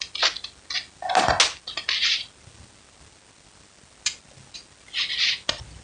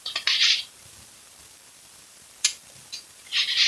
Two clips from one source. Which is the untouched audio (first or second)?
first